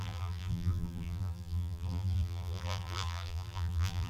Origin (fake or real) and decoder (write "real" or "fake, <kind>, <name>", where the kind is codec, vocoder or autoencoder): fake, vocoder, BigVGAN v2